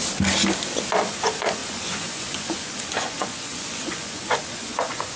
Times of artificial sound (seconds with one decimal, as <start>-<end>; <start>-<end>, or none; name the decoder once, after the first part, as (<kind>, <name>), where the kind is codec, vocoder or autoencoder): 1.0-5.2 (vocoder, Vocos)